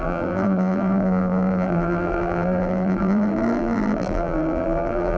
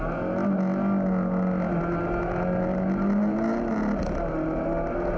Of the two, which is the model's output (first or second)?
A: first